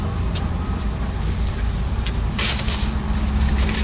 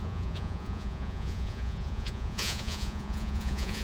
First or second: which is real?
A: first